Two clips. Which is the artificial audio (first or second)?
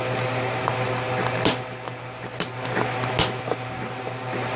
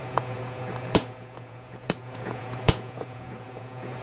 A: second